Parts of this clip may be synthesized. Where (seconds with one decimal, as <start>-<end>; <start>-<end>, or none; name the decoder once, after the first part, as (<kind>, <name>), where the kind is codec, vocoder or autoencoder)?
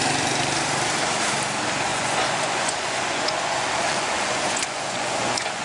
1.9-5.6 (vocoder, Vocos)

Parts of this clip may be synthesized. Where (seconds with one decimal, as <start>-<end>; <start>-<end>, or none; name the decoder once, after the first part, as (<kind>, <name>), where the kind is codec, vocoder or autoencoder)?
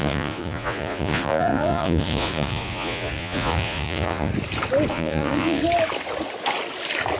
0.0-4.3 (vocoder, Vocos); 4.9-5.6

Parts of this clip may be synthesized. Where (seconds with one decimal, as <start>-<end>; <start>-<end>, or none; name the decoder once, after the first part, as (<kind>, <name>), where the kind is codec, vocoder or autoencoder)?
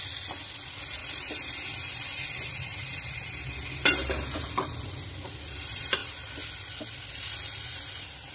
none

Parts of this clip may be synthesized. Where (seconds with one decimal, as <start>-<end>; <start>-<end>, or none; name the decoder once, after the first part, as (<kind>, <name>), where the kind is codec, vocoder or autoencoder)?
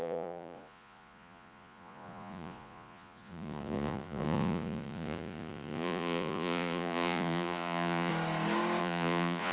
0.0-8.1 (vocoder, Vocos); 8.8-9.5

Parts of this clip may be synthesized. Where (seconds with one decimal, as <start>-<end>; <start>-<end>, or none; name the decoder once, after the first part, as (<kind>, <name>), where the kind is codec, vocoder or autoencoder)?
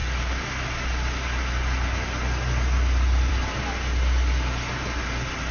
none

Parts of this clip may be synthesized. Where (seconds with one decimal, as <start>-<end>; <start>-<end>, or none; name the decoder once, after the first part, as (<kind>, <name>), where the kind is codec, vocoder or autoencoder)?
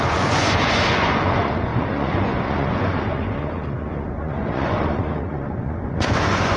0.0-6.6 (vocoder, Vocos)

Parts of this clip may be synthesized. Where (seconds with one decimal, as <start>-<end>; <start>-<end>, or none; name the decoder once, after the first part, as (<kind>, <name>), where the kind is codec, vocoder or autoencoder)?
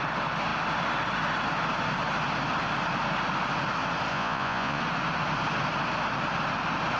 4.1-4.8 (vocoder, Vocos)